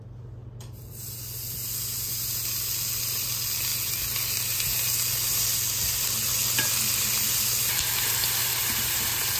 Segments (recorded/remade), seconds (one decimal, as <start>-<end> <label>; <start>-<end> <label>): 0.0-8.4 recorded; 8.4-9.4 remade